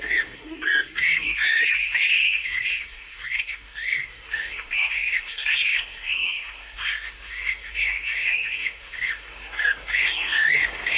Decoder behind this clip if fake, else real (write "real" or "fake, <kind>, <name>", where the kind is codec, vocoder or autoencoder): fake, codec, SNAC